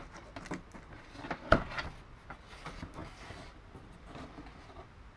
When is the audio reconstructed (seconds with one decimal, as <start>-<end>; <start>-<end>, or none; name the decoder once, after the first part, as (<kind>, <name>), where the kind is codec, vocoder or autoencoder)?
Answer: none